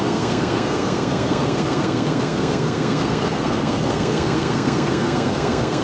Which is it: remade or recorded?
remade